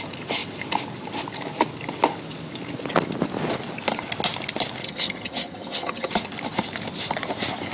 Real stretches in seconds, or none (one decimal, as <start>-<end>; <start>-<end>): 0.0-4.8; 6.1-7.7

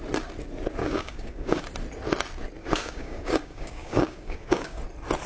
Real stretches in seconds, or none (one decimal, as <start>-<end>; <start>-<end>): 0.0-0.8; 1.6-2.6; 4.8-5.3